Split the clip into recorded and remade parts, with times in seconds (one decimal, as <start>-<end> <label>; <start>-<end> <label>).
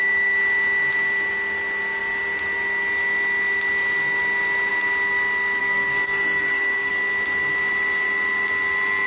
0.0-5.6 recorded; 5.6-6.9 remade; 6.9-9.1 recorded